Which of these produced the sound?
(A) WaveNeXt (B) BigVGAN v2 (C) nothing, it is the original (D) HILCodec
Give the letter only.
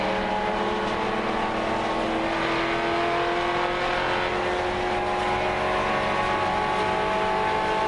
C